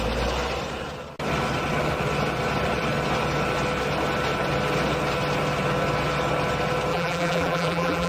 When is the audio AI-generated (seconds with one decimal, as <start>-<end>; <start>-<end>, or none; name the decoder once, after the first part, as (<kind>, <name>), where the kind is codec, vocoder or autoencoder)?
6.9-8.1 (vocoder, BigVGAN v2)